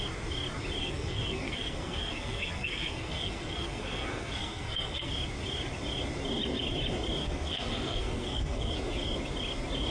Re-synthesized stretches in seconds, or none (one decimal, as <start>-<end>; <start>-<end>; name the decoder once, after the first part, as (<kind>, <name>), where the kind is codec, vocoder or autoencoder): 0.8-5.1 (codec, SNAC); 7.2-8.7